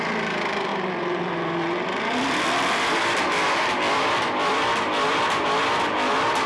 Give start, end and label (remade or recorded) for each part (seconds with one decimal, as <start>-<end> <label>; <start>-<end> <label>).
0.0-6.5 remade